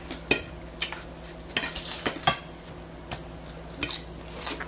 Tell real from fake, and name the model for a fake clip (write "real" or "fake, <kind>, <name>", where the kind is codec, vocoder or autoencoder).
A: real